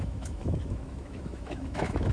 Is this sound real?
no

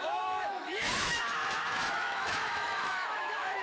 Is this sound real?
no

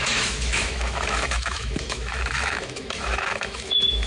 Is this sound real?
no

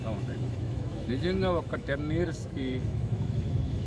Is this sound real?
no